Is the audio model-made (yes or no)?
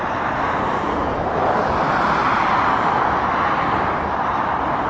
no